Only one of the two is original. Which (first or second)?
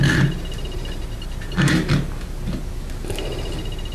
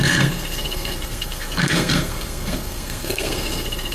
first